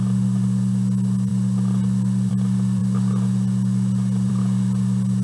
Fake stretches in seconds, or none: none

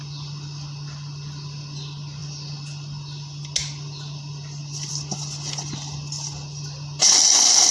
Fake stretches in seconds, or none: none

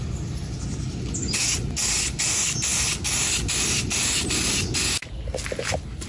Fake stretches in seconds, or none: none

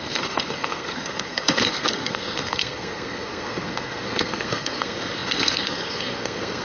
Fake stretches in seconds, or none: 0.0-6.6 (codec, SNAC)